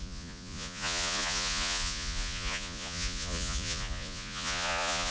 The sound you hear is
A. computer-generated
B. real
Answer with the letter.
A